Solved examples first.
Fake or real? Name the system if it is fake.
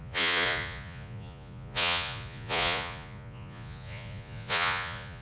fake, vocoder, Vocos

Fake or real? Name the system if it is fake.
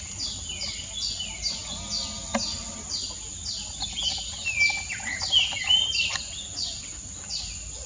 real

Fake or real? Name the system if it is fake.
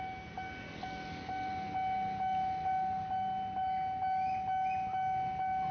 real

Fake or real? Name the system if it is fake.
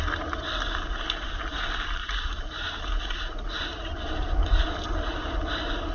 real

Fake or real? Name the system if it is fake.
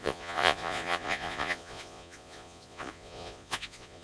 fake, vocoder, Vocos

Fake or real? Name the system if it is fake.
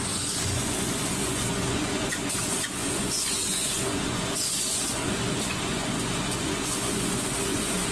fake, vocoder, Vocos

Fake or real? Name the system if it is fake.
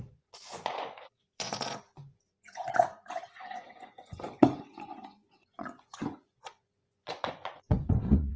fake, vocoder, Vocos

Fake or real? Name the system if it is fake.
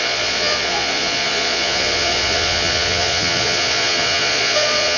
fake, vocoder, Vocos